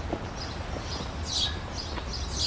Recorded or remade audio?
recorded